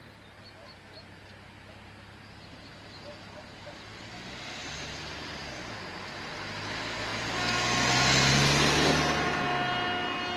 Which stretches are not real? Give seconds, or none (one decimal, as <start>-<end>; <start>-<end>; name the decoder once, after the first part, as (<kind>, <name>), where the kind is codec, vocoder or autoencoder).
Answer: 4.6-5.4 (vocoder, BigVGAN v2)